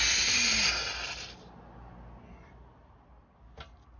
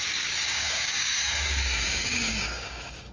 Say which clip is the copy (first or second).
second